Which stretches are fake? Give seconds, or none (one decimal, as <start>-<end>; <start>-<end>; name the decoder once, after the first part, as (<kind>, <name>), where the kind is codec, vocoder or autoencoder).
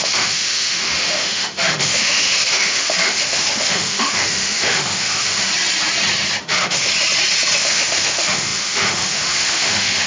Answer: 0.0-5.5 (autoencoder, DAC-VAE); 6.4-6.9; 7.6-10.1